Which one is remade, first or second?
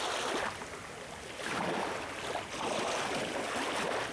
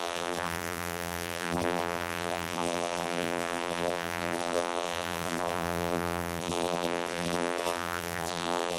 second